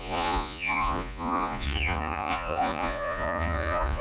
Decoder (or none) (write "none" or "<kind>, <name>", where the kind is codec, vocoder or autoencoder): vocoder, Vocos